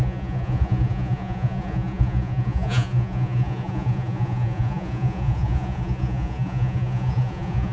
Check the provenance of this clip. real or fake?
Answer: fake